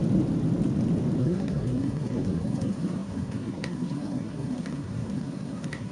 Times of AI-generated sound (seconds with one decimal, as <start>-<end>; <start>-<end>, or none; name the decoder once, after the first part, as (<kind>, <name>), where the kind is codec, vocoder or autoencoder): 1.2-5.9 (codec, SNAC)